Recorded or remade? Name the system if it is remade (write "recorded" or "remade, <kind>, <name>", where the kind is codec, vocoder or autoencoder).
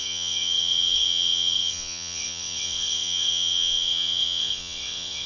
remade, vocoder, WaveNeXt